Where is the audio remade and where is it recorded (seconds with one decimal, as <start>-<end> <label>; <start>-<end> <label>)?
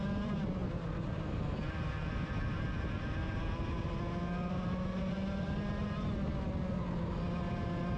0.0-8.0 recorded